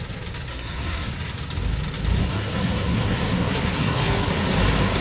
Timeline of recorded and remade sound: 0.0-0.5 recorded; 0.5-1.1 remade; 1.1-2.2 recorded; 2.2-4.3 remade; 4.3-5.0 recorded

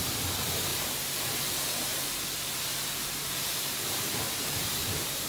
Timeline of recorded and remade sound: 0.0-0.7 recorded; 0.7-1.3 remade; 1.3-1.9 recorded; 1.9-5.3 remade

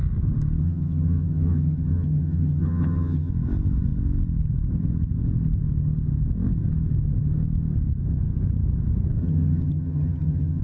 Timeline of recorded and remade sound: 0.0-0.6 recorded; 0.6-3.3 remade; 3.3-9.2 recorded; 9.2-10.6 remade

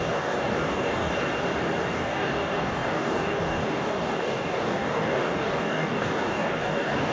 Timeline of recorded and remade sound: 0.0-1.1 remade; 1.1-1.9 recorded; 1.9-7.1 remade

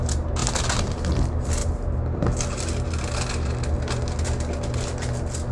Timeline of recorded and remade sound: 0.0-1.6 recorded; 1.6-2.2 remade; 2.2-5.5 recorded

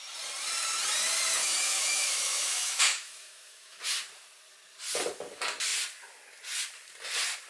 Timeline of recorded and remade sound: 0.0-1.4 recorded; 1.4-3.8 remade; 3.8-7.5 recorded

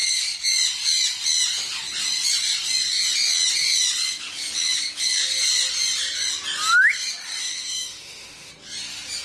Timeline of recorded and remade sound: 0.0-7.4 recorded; 7.4-8.5 remade; 8.5-9.2 recorded

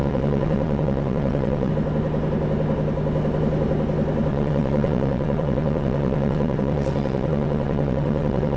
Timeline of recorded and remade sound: 0.0-1.7 remade; 1.7-4.3 recorded; 4.3-8.6 remade